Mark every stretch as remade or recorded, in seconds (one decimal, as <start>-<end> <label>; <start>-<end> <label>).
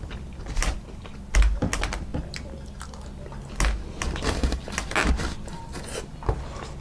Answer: 0.0-6.8 recorded